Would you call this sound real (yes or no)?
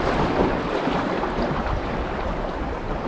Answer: yes